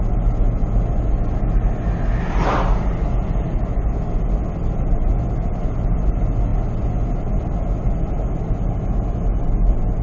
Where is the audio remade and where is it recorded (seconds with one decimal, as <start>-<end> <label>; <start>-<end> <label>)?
0.0-10.0 recorded

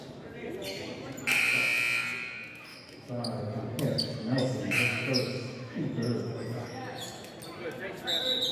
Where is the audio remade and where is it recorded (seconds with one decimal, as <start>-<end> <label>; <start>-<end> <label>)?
0.0-2.7 recorded; 2.7-3.4 remade; 3.4-4.1 recorded; 4.1-7.3 remade; 7.3-8.5 recorded

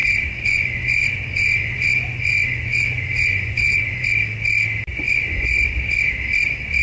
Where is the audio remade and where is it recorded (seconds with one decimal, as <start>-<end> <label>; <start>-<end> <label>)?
0.0-4.1 remade; 4.1-4.9 recorded; 4.9-5.6 remade; 5.6-6.8 recorded

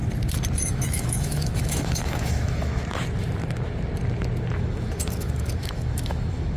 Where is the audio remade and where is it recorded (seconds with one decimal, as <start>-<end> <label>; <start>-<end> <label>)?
0.0-0.7 recorded; 0.7-2.8 remade; 2.8-4.6 recorded; 4.6-6.6 remade

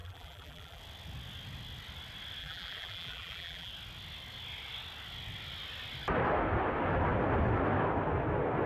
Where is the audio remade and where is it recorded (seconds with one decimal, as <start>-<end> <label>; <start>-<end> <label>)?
0.0-0.8 remade; 0.8-2.4 recorded; 2.4-3.7 remade; 3.7-8.7 recorded

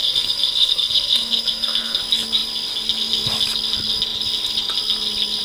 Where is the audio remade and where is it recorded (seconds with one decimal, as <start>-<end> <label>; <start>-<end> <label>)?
0.0-2.0 remade; 2.0-5.4 recorded

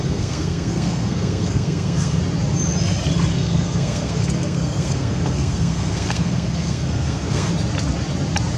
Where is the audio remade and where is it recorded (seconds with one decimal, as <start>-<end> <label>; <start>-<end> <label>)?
0.0-2.2 remade; 2.2-3.3 recorded; 3.3-7.5 remade; 7.5-8.6 recorded

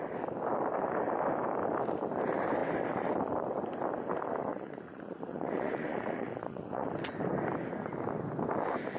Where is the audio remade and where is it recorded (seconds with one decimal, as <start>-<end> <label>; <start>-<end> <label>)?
0.0-4.5 recorded; 4.5-6.9 remade; 6.9-9.0 recorded